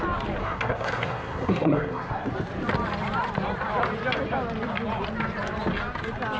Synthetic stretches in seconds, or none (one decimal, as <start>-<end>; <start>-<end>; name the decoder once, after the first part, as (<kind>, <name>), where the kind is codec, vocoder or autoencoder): 0.4-2.3 (codec, SNAC)